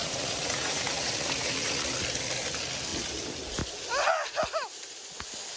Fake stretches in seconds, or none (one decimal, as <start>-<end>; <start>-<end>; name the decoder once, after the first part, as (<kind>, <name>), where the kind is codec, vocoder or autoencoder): 0.0-1.9 (vocoder, Vocos)